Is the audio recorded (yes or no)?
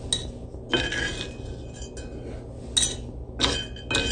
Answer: yes